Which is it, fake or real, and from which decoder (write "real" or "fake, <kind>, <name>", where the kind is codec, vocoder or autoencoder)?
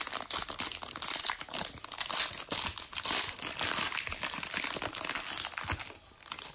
real